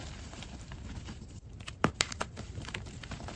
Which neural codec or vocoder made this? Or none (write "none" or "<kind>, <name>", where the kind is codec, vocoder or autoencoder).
vocoder, BigVGAN v2